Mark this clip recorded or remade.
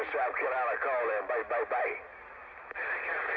remade